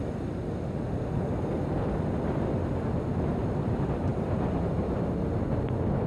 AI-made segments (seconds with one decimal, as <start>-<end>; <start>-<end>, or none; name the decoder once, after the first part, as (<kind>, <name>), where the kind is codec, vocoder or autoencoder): 4.1-4.7 (vocoder, BigVGAN v2)